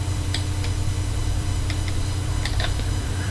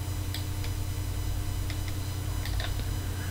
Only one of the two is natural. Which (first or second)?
second